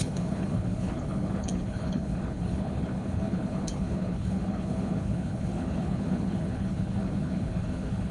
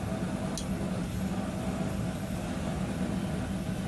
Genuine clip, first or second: second